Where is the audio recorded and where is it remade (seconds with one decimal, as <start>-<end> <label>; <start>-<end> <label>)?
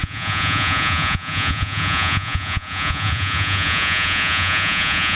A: 0.0-5.1 remade